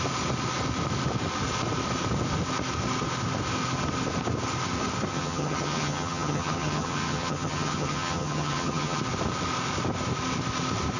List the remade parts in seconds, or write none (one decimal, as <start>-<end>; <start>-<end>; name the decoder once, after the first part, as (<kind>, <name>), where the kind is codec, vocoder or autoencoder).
5.1-9.0 (vocoder, HiFi-GAN)